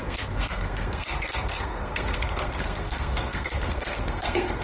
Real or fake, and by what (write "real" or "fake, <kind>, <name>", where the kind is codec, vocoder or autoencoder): fake, codec, SNAC